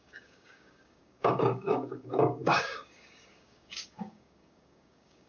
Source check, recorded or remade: remade